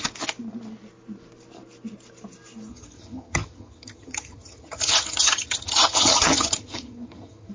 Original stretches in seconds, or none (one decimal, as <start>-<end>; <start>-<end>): 0.0-2.7